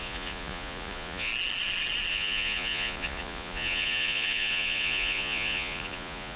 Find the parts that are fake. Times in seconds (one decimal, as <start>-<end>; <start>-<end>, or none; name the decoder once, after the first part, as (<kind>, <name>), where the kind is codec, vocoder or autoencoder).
0.0-1.3 (vocoder, Vocos); 2.1-6.4